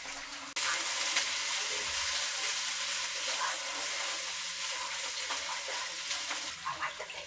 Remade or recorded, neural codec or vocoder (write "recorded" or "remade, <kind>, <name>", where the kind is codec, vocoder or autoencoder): recorded